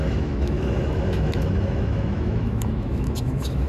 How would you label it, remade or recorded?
remade